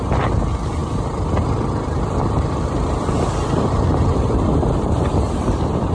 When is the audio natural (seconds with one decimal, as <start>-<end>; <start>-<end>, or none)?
0.0-5.9